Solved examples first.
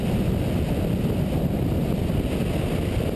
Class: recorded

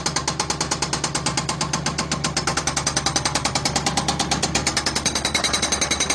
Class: recorded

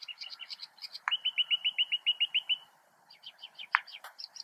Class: remade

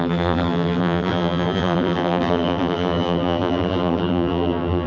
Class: remade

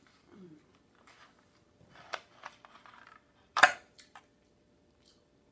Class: remade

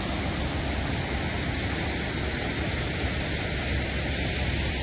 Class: recorded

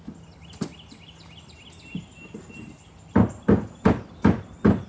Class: recorded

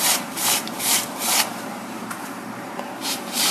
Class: remade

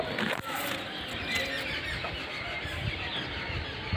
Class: recorded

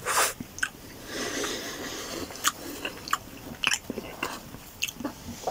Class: recorded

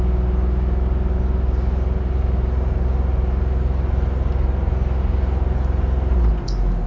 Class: recorded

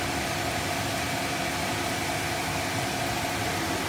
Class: recorded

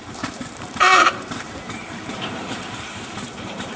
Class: remade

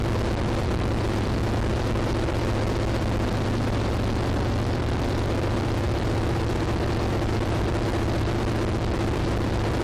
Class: remade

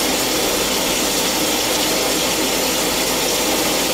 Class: recorded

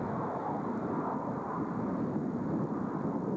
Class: recorded